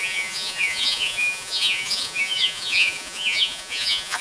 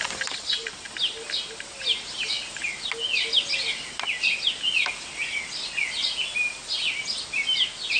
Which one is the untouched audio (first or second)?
second